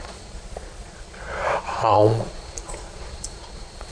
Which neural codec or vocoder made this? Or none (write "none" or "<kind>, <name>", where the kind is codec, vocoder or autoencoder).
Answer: vocoder, Vocos